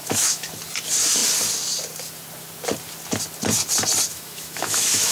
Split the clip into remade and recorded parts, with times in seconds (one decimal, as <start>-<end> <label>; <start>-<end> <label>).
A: 0.0-0.5 remade; 0.5-4.1 recorded; 4.1-5.1 remade